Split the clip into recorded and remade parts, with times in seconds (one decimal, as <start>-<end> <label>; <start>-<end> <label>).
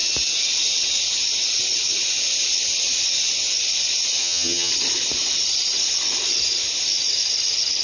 0.0-4.2 recorded; 4.2-4.7 remade; 4.7-7.8 recorded